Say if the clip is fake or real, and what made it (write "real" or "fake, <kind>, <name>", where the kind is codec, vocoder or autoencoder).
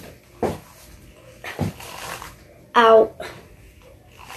real